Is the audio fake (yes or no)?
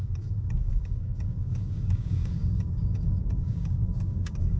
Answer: yes